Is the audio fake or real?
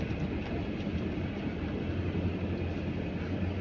real